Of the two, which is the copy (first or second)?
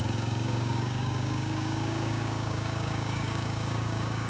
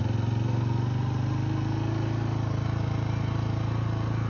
first